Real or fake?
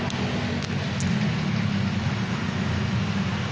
real